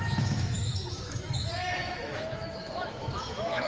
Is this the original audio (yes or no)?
no